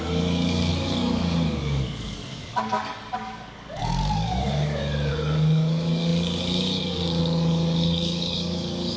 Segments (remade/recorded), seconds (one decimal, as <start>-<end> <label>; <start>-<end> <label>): 0.0-9.0 remade